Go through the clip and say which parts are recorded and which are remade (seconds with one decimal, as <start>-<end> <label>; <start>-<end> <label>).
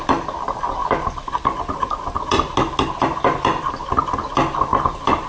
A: 0.0-5.3 recorded